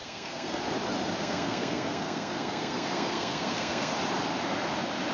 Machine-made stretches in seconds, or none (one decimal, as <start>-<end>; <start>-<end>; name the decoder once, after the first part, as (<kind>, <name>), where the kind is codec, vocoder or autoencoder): 0.0-0.6 (codec, SNAC); 1.2-3.9